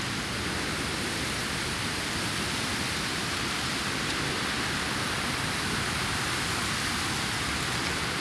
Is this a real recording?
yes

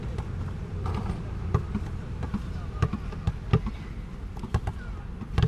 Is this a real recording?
yes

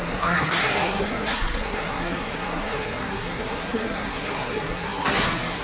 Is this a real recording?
no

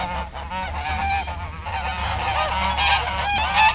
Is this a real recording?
yes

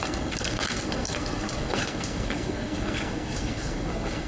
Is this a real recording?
no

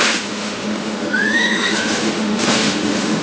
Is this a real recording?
no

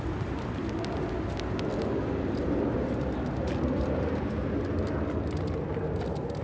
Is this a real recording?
yes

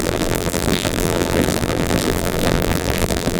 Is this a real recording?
no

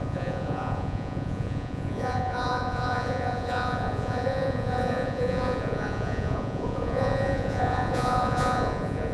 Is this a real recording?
no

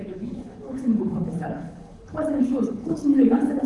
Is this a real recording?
no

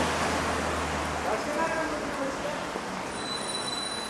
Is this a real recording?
yes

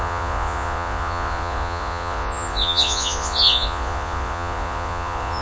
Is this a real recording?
no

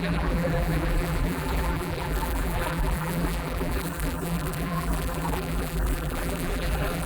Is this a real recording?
no